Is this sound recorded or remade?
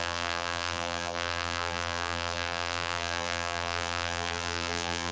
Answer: remade